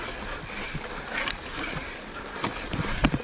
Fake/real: real